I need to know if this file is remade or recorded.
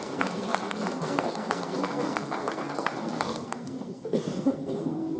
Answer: remade